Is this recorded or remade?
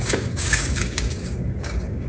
remade